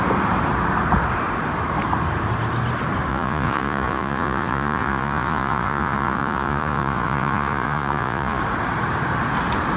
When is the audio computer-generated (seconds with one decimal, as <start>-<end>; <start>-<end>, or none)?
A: 3.1-8.4